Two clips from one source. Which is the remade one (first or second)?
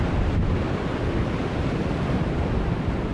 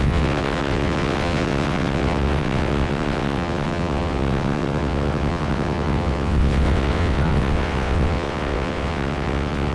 second